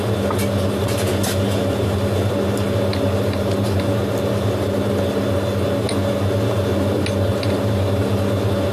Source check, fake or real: real